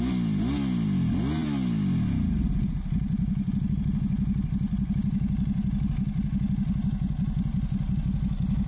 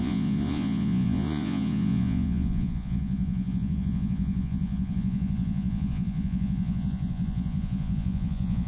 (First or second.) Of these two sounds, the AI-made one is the second